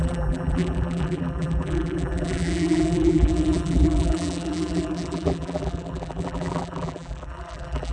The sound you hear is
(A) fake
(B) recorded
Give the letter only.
A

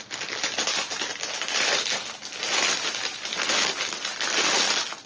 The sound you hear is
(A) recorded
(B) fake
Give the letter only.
A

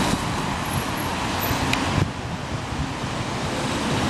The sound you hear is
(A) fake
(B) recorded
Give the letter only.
B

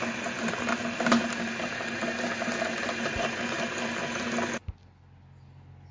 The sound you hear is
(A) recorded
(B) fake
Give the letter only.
A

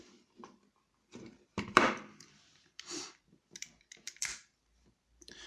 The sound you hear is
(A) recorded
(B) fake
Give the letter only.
B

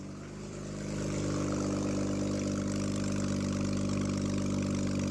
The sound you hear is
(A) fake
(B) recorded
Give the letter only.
A